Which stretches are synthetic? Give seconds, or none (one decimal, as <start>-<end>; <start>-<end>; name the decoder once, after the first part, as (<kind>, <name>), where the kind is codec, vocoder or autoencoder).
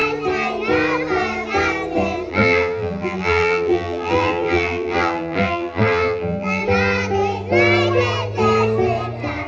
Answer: 2.3-6.6 (vocoder, BigVGAN v2)